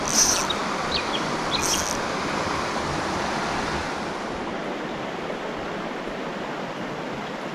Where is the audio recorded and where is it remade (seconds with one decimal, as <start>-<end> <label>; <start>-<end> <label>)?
0.0-7.5 recorded